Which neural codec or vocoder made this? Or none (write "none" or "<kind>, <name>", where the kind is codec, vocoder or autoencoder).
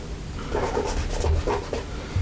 none